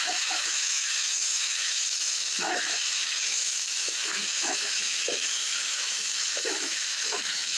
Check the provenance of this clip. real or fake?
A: fake